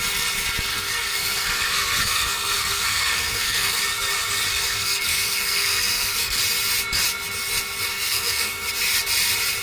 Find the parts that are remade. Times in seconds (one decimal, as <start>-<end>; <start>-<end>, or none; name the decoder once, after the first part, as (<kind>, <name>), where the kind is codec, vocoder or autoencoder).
0.7-3.8 (codec, SNAC); 4.5-6.4; 7.9-8.7